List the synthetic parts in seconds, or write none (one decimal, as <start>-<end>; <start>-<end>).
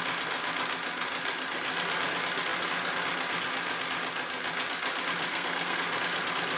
5.3-5.9